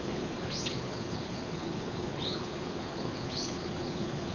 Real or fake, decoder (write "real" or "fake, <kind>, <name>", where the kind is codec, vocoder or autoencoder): fake, codec, HILCodec